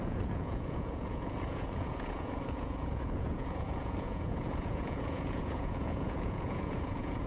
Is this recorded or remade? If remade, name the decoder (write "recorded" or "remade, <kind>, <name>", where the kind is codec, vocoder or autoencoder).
remade, vocoder, Vocos